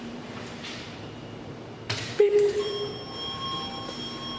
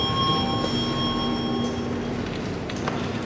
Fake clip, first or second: first